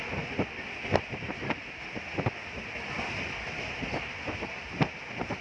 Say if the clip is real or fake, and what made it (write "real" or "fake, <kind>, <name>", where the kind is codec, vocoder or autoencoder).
real